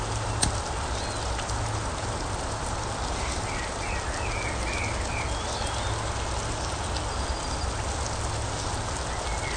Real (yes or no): yes